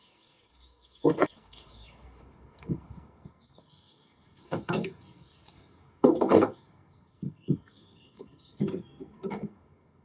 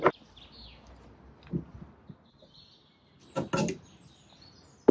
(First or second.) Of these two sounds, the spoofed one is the first